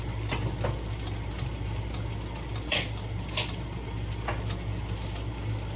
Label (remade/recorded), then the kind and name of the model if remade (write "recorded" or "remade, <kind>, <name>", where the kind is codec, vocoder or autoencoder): recorded